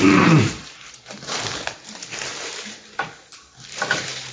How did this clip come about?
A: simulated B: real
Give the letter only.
A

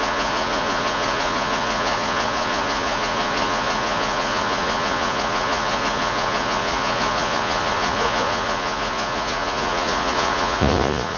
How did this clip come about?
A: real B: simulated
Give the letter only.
B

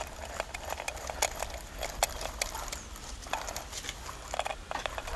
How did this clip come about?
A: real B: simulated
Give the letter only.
A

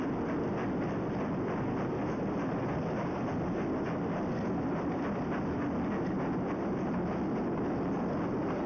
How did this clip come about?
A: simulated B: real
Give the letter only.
B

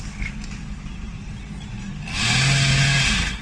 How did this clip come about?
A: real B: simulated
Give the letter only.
A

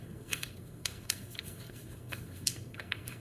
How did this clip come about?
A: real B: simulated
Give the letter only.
B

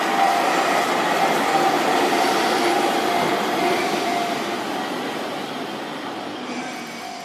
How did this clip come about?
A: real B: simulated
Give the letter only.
A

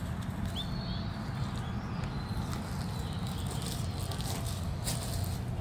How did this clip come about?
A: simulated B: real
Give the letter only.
B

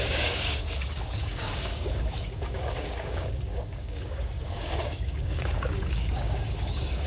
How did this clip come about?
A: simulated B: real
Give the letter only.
A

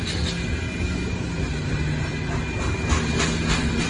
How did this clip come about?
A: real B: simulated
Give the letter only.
A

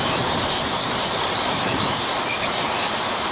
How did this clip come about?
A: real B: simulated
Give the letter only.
B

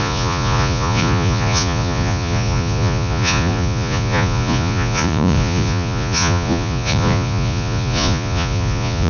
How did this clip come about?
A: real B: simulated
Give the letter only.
B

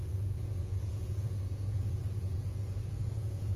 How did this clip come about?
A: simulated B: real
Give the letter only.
A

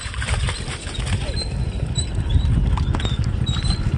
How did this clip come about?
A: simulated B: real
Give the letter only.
B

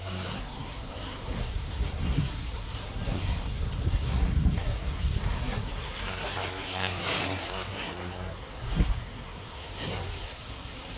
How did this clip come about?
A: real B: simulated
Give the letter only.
B